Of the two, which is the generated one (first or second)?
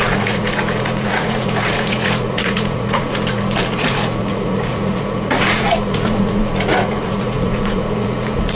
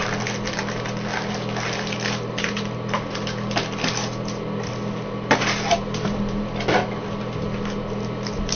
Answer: first